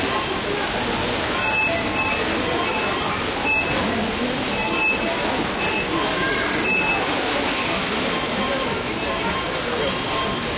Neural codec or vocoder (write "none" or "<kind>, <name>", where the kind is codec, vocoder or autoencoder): none